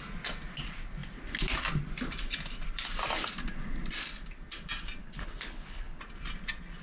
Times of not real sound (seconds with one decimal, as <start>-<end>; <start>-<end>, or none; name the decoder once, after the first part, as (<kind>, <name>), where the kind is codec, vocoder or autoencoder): 5.0-6.0 (codec, HILCodec)